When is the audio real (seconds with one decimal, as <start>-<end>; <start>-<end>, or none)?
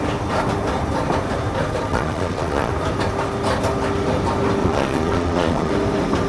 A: 0.0-1.9; 2.7-4.6; 5.7-6.3